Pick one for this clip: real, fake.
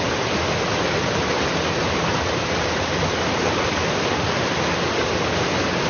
real